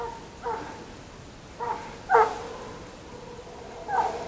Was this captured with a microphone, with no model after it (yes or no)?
yes